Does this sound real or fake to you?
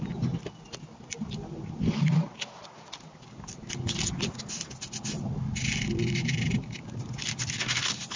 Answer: real